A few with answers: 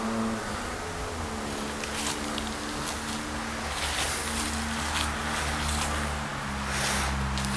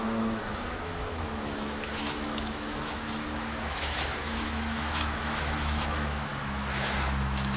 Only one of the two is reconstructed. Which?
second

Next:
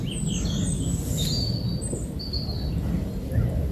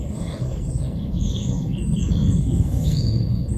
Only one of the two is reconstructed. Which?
second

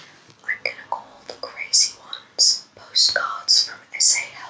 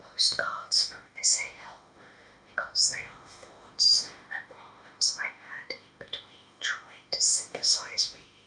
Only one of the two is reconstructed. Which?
second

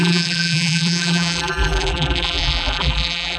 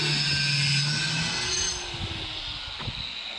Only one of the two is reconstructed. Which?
first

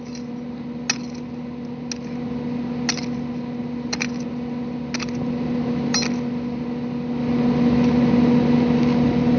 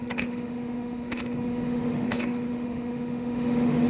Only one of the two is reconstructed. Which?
second